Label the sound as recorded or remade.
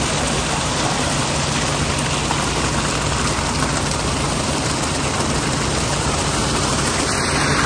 recorded